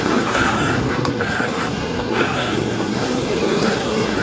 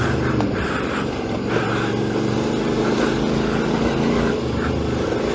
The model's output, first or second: first